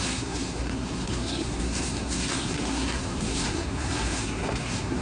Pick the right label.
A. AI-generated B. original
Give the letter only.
A